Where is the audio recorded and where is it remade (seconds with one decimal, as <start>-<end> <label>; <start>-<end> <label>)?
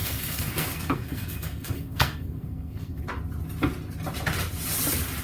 0.0-3.0 remade; 3.0-5.2 recorded